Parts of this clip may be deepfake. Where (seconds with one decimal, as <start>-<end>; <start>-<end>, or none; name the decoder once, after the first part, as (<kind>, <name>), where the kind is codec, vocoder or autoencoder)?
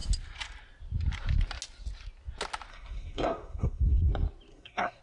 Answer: 2.7-4.1 (codec, SNAC); 4.5-5.0